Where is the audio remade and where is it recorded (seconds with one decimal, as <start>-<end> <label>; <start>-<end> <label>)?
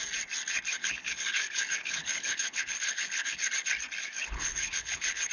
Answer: 0.0-0.7 recorded; 0.7-3.5 remade; 3.5-4.0 recorded; 4.0-5.3 remade